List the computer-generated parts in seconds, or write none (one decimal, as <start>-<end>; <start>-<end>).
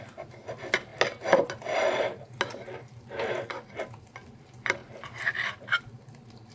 none